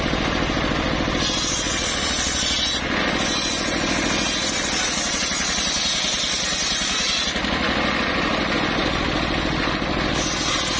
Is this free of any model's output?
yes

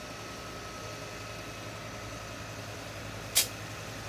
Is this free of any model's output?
yes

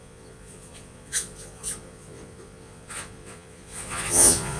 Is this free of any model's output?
no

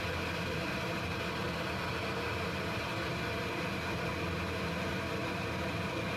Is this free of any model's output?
yes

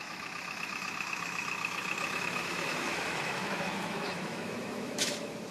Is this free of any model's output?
no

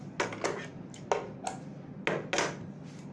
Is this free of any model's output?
yes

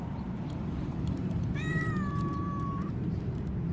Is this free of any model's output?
no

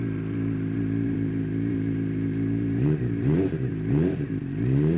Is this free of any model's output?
no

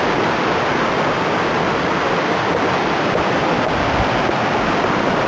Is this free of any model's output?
yes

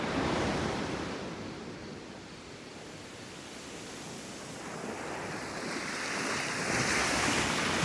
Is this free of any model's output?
yes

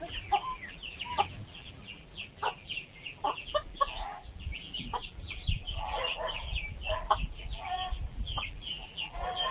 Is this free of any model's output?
no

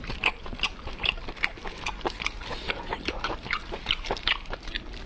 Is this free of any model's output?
no